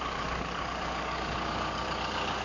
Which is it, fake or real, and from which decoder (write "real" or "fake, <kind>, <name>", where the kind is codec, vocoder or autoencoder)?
fake, codec, DAC